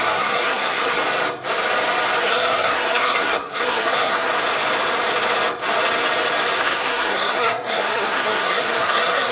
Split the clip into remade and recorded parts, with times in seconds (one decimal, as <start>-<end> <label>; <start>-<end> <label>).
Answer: 0.0-1.0 remade; 1.0-2.2 recorded; 2.2-4.3 remade; 4.3-6.6 recorded; 6.6-9.3 remade